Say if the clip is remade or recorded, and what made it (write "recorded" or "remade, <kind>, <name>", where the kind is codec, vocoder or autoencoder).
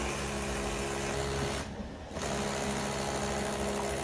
recorded